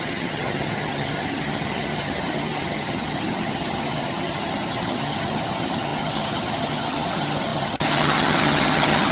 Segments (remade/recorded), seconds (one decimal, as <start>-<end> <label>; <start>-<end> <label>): 0.0-9.1 remade